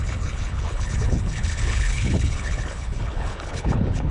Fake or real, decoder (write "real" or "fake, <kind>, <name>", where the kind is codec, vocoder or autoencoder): fake, codec, HILCodec